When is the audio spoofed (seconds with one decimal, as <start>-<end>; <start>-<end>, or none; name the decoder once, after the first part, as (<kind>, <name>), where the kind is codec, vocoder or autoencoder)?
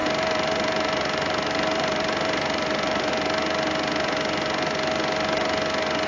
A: 0.0-3.1 (vocoder, BigVGAN v2)